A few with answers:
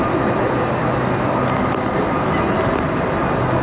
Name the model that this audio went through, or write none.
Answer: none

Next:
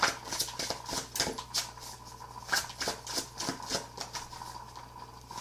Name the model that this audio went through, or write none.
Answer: none